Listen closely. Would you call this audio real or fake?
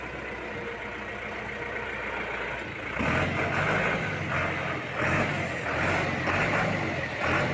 real